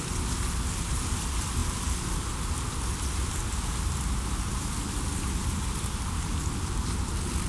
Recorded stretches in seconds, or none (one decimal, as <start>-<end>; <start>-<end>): 0.0-7.5